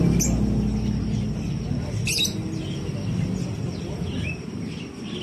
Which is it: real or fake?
real